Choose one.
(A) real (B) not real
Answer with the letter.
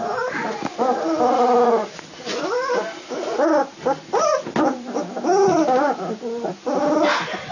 A